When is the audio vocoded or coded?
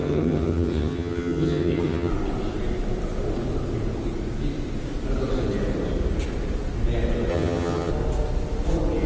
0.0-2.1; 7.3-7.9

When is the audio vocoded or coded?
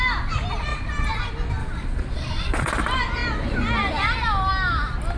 1.6-2.7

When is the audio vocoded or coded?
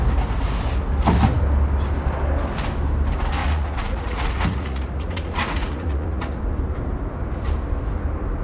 3.4-6.4